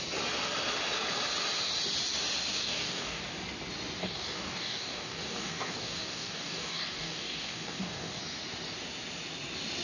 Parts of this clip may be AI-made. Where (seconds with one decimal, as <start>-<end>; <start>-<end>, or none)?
2.5-3.2; 4.0-8.2